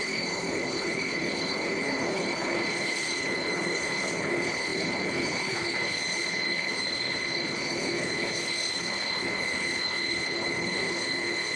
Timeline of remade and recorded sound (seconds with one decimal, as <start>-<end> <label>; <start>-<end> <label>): 0.0-11.6 remade